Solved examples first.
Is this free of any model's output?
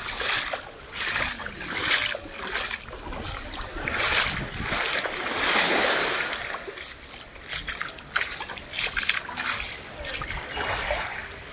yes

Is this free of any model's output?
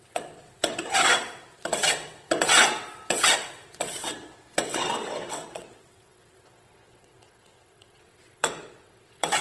no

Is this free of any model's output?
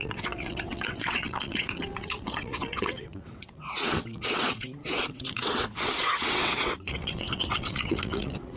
no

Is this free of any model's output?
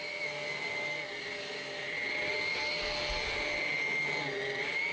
yes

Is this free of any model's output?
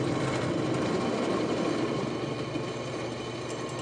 yes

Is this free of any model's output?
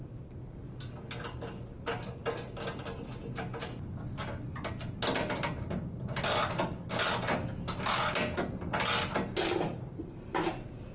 yes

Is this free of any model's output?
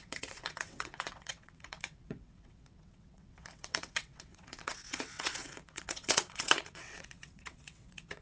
no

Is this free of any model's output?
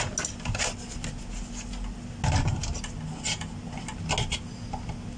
yes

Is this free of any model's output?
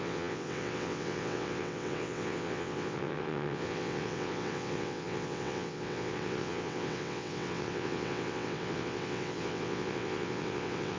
no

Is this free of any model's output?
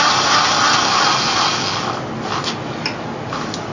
yes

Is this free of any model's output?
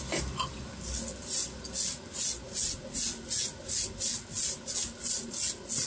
yes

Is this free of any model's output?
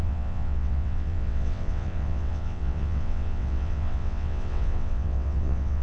no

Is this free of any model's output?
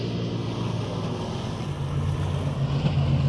yes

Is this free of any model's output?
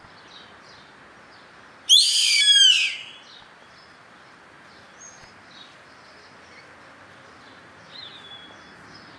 yes